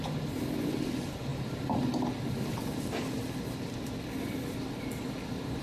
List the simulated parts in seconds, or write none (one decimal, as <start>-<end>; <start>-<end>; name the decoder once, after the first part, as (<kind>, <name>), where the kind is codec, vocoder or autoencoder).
none